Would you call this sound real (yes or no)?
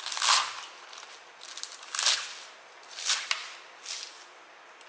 yes